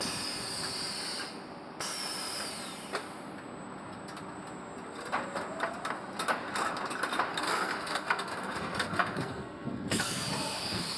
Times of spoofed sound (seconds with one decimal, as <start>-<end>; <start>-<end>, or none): 7.3-11.0